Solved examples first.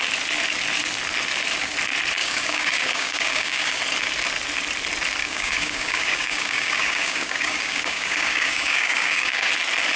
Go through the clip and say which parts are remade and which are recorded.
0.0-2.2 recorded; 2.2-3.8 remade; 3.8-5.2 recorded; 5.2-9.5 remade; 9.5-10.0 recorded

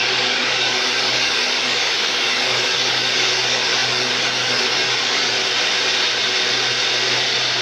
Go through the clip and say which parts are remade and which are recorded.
0.0-5.4 remade; 5.4-7.6 recorded

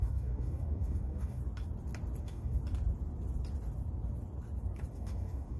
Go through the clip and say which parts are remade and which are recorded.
0.0-1.4 remade; 1.4-2.2 recorded; 2.2-2.6 remade; 2.6-4.9 recorded; 4.9-5.6 remade